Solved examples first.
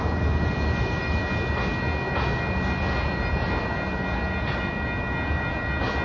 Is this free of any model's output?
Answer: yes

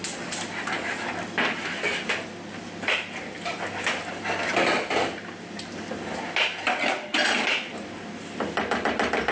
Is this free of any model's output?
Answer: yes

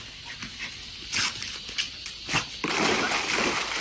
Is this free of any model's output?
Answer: no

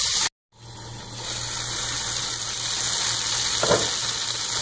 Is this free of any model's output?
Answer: yes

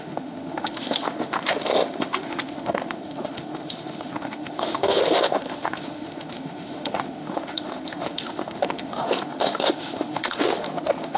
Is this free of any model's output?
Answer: no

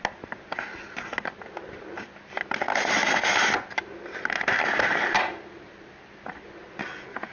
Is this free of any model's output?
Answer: yes